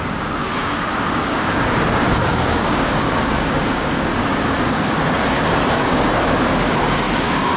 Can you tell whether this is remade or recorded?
remade